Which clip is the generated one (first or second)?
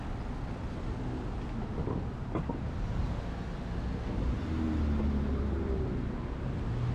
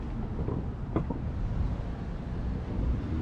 second